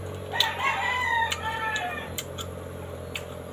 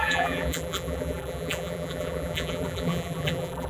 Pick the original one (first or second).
first